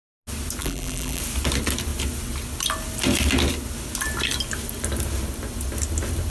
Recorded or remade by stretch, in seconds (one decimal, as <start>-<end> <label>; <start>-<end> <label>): 0.0-0.6 recorded; 0.6-1.2 remade; 1.2-6.3 recorded